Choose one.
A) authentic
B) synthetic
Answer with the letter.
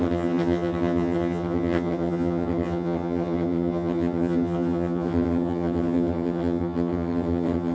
B